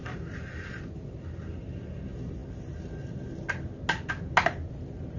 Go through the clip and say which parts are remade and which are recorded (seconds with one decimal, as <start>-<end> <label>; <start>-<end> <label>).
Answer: 0.0-5.2 recorded